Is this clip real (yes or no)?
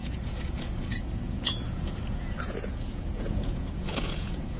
no